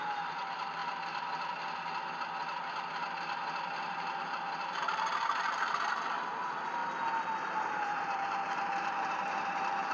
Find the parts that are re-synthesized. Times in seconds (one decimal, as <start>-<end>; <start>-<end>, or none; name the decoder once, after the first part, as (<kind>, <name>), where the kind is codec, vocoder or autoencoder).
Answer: 0.0-0.8 (vocoder, BigVGAN v2); 3.9-6.8; 7.7-9.9